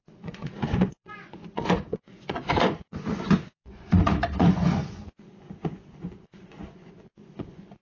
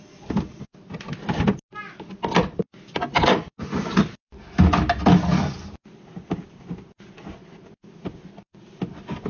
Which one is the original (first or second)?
second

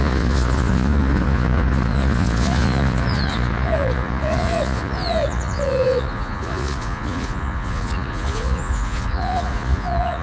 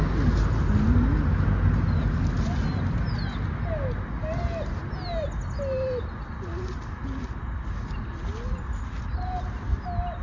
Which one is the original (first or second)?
second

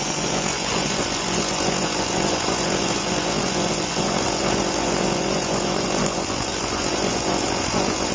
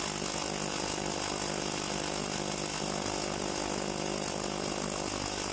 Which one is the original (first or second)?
second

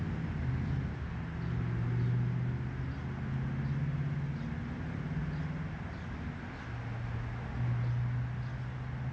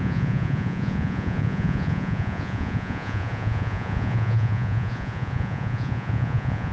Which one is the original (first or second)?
first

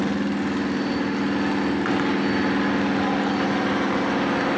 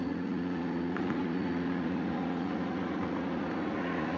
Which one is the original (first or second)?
first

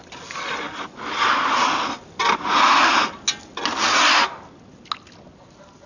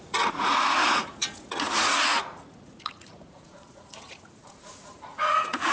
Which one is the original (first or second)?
first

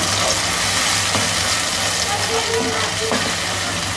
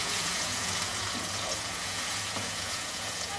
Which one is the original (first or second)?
first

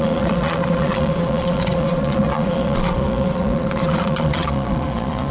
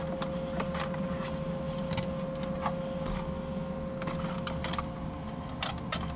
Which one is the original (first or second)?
second